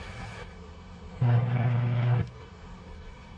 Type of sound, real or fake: fake